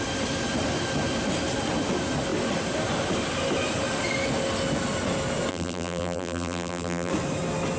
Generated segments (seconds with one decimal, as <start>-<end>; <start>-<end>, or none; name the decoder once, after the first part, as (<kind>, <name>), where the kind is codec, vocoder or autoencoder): 5.5-7.1 (vocoder, BigVGAN v2)